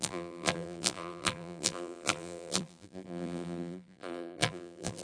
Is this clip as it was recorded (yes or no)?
no